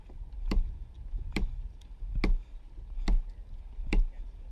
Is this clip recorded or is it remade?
recorded